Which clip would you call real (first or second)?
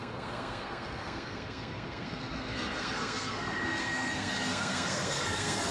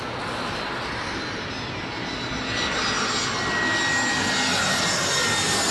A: second